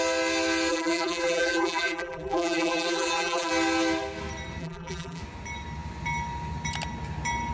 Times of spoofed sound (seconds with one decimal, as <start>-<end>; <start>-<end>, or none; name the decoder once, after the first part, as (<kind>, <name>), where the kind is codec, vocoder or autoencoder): 0.7-3.5 (vocoder, BigVGAN v2); 4.6-5.2